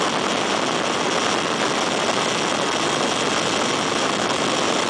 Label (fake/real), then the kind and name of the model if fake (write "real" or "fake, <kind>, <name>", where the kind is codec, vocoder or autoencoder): real